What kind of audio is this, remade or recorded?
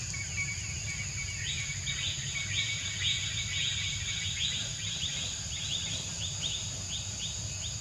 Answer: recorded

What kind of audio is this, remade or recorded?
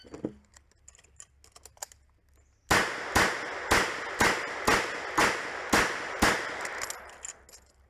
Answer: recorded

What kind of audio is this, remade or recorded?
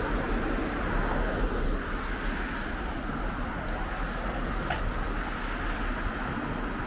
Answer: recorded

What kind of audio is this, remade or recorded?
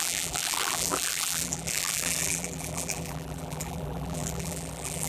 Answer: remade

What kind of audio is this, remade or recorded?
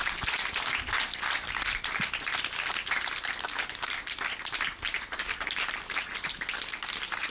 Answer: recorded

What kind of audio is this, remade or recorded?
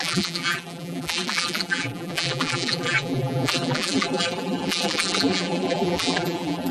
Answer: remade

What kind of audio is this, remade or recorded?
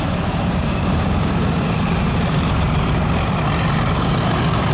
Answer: remade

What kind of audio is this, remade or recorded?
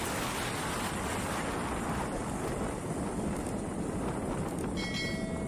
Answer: recorded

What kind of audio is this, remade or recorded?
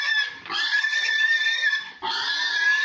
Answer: recorded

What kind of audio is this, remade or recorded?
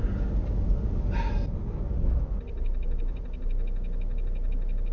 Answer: recorded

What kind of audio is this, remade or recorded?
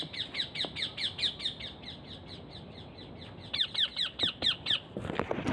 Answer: recorded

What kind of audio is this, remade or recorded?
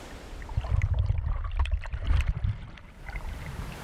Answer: remade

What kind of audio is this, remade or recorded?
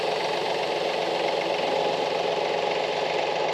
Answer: recorded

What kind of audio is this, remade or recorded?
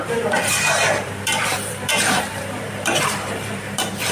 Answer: remade